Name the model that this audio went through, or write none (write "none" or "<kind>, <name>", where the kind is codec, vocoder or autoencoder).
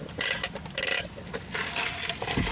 none